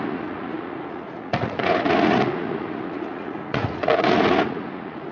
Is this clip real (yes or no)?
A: no